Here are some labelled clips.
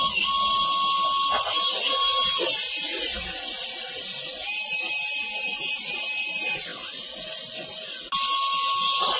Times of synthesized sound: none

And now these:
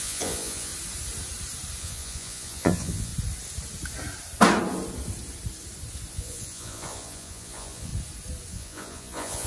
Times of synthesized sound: 0.0-0.7 (vocoder, Vocos); 1.8-3.1; 6.1-7.9; 8.5-9.5

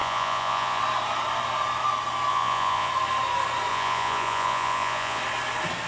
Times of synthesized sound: 0.0-0.8 (vocoder, Vocos); 2.3-2.9; 3.7-5.2

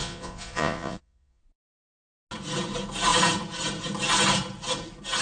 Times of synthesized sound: 0.0-1.4 (vocoder, Vocos)

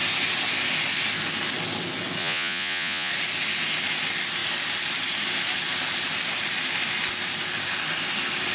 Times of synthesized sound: 2.2-3.1 (vocoder, Vocos)

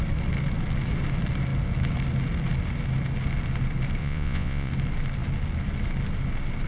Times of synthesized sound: 4.0-4.7 (vocoder, Vocos)